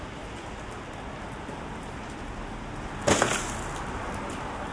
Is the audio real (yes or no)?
yes